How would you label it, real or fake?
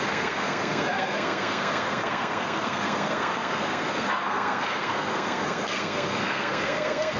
fake